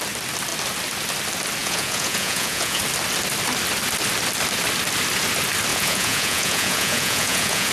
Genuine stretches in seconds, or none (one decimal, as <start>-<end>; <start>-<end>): 0.0-1.6; 2.8-5.7